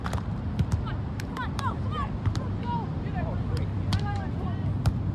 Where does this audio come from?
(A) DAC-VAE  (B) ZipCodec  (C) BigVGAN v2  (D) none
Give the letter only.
D